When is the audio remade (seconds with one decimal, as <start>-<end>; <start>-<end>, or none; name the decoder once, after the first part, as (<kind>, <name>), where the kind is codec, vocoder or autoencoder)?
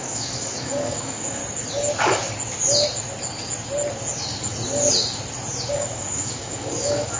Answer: 0.0-1.4 (codec, DAC); 5.7-7.2